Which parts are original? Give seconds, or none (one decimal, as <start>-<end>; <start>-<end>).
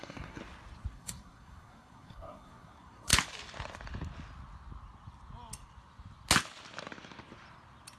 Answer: 0.4-0.9; 3.1-8.0